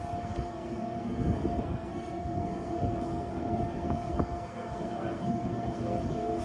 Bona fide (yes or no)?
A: no